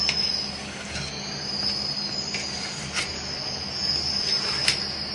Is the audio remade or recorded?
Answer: recorded